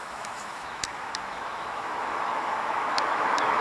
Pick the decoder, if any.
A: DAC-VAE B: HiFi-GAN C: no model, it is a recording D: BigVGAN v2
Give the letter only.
A